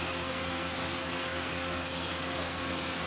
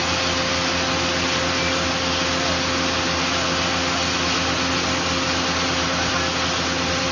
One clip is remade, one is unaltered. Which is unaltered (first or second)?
second